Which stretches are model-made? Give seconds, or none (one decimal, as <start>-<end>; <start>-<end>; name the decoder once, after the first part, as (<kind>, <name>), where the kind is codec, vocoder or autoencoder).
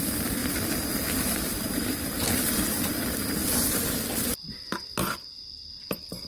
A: 0.0-3.4 (vocoder, BigVGAN v2); 5.8-6.3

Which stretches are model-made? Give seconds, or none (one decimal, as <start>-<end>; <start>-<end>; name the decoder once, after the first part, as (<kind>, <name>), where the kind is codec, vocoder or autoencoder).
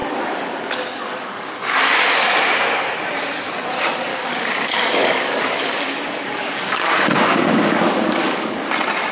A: 0.0-1.8 (codec, DAC); 4.1-8.6